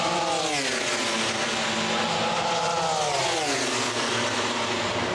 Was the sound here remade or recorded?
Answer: recorded